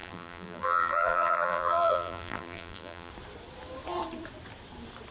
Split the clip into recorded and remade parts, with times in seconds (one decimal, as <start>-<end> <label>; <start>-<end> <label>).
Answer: 0.0-3.1 remade; 3.1-5.1 recorded